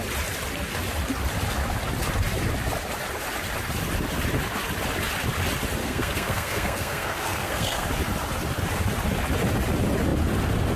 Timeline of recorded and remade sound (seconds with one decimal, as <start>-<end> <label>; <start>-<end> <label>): 0.0-5.8 recorded; 5.8-7.9 remade; 7.9-10.8 recorded